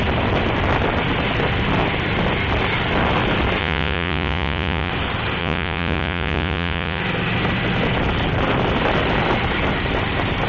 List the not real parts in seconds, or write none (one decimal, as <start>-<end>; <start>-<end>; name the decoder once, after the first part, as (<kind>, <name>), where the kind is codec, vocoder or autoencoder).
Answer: 3.6-4.9 (vocoder, Vocos); 5.4-7.0

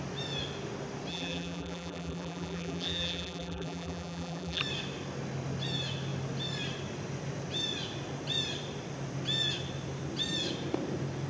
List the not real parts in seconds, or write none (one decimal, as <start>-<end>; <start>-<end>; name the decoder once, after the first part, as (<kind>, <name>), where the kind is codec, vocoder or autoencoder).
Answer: 1.1-4.6 (vocoder, BigVGAN v2)

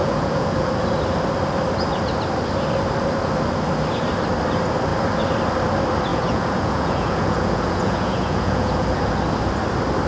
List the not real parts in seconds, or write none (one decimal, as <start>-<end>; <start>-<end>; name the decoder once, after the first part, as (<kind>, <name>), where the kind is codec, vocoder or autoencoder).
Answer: 0.0-0.7 (vocoder, Vocos); 6.1-9.1

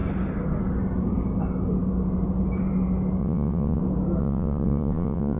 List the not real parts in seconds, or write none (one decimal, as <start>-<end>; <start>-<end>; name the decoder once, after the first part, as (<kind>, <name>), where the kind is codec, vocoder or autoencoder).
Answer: 3.2-3.8 (vocoder, WaveNeXt); 4.2-5.4

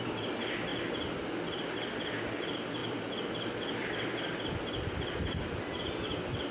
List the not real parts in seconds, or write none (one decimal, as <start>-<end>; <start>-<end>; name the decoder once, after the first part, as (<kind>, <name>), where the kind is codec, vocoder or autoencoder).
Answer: none

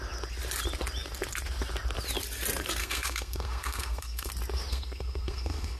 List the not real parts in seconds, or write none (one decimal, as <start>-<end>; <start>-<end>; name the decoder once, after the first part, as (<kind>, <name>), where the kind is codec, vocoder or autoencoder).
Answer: 2.8-4.3 (codec, SNAC); 4.7-5.8

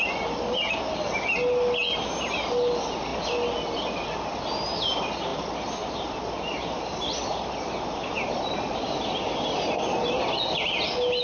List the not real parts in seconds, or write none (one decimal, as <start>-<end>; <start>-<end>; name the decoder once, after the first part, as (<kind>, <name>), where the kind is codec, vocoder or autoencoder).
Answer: none